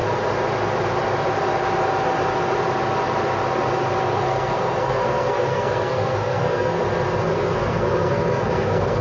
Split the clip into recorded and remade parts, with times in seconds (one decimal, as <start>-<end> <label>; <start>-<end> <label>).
0.0-4.0 recorded; 4.0-6.8 remade; 6.8-7.3 recorded; 7.3-9.0 remade